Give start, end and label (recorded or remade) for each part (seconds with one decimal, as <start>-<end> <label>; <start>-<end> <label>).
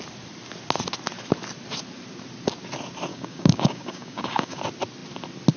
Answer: 0.0-3.1 recorded; 3.1-4.6 remade; 4.6-5.6 recorded